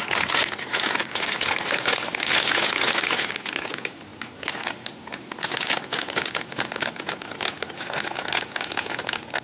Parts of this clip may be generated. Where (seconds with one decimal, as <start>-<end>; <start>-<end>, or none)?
none